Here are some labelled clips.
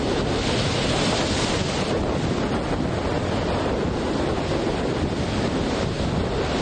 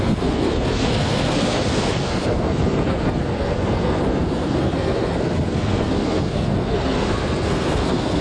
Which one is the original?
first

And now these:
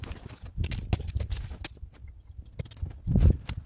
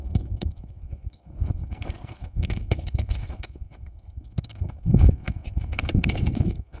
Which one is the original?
first